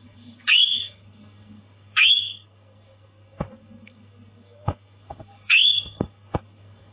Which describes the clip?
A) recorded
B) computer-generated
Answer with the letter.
B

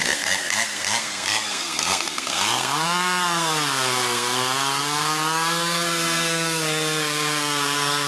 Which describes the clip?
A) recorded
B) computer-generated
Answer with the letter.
B